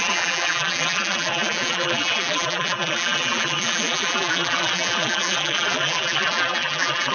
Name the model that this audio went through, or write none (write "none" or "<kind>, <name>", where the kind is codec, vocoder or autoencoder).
vocoder, BigVGAN v2